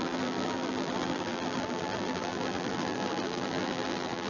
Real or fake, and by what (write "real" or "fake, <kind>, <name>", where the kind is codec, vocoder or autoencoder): fake, vocoder, BigVGAN v2